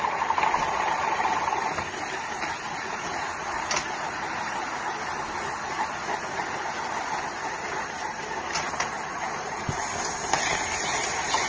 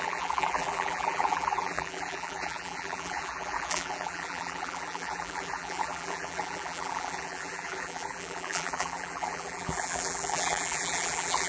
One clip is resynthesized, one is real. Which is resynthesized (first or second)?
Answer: second